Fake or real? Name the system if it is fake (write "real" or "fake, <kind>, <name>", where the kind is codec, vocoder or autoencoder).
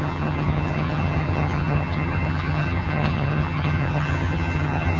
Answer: fake, vocoder, HiFi-GAN